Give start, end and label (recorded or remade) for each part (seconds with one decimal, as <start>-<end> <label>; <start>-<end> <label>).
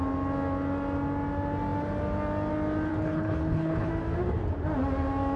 0.0-2.9 recorded; 2.9-3.9 remade; 3.9-5.4 recorded